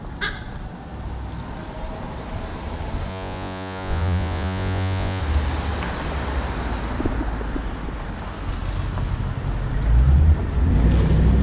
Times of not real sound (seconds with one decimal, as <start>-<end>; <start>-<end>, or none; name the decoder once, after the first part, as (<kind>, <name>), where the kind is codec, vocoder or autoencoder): 3.1-5.2 (vocoder, Vocos)